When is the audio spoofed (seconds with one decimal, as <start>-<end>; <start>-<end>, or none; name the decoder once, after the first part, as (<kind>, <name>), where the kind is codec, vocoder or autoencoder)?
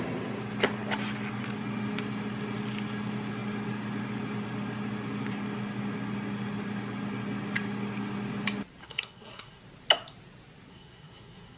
8.8-9.6 (codec, SNAC); 10.7-11.6